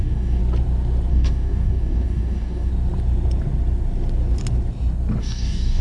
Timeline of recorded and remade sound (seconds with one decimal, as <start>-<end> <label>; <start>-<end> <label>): 0.0-0.4 remade; 0.4-1.1 recorded; 1.1-2.7 remade; 2.7-5.2 recorded; 5.2-5.8 remade